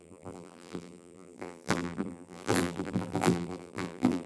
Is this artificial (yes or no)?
yes